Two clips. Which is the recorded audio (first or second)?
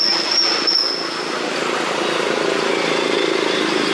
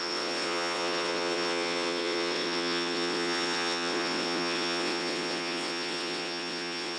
first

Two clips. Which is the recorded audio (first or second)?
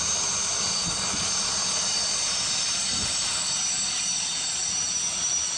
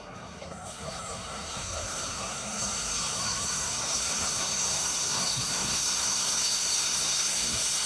first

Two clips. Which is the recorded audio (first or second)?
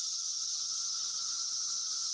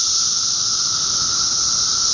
second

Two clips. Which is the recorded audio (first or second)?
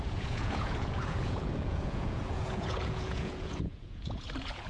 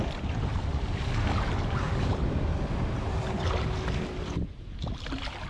second